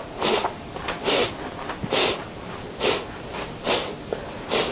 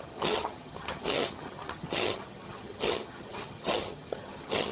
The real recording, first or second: first